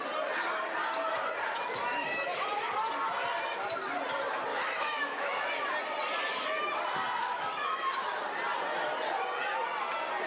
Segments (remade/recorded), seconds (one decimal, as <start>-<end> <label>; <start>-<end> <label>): 0.0-1.9 recorded; 1.9-2.4 remade; 2.4-4.5 recorded; 4.5-5.5 remade; 5.5-7.2 recorded; 7.2-8.2 remade; 8.2-10.3 recorded